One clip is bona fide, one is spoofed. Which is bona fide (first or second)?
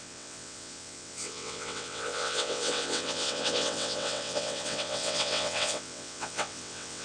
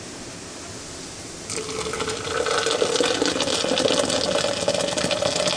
second